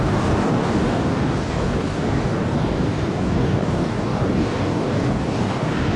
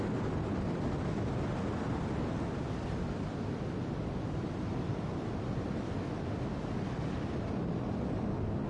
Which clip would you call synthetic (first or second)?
first